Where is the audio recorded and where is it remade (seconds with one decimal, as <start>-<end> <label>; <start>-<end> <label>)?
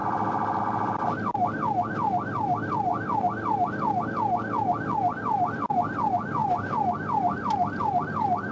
0.0-8.5 recorded